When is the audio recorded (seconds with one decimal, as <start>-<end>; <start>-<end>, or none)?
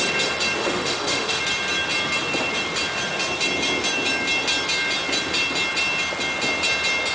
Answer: 0.0-0.6; 1.4-7.1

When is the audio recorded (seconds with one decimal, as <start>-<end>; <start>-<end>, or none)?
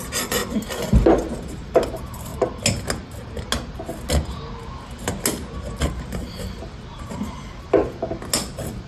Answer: 0.4-1.5; 2.3-5.9; 7.8-8.9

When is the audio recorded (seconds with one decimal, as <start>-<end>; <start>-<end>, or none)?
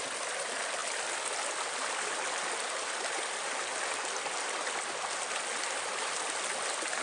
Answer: 0.0-7.0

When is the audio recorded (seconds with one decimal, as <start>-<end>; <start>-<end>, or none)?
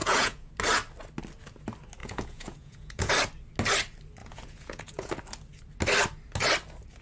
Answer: 0.5-2.0; 3.1-4.2; 5.1-7.0